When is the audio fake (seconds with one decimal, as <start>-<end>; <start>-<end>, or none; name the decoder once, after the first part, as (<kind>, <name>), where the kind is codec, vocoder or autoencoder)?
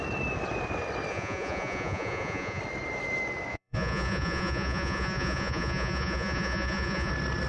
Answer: 1.1-2.6 (vocoder, Vocos); 3.5-7.1